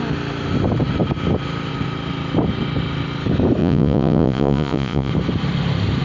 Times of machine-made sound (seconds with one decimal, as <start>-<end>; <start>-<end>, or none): 3.6-5.1